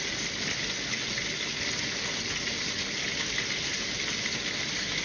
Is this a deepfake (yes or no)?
no